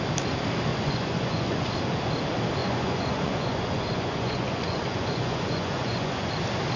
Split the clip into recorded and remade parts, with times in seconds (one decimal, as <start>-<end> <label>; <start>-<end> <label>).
0.0-0.7 recorded; 0.7-1.7 remade; 1.7-2.6 recorded; 2.6-6.3 remade; 6.3-6.8 recorded